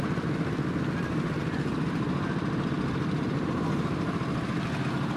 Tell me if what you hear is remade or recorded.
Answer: recorded